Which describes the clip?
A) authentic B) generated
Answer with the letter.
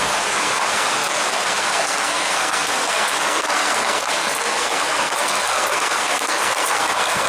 B